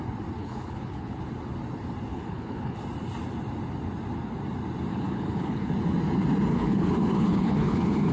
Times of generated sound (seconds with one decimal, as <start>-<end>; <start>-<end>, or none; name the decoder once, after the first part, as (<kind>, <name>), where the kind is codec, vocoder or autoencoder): 0.4-1.2 (codec, HILCodec); 2.1-2.8; 4.9-5.7; 6.5-8.1